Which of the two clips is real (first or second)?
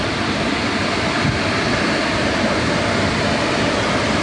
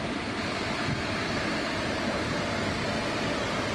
second